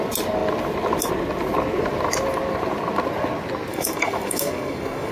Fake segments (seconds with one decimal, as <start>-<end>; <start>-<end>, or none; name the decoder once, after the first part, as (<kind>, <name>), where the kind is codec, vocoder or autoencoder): 3.7-5.1 (codec, DAC)